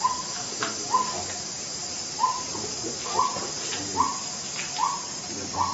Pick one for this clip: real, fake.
real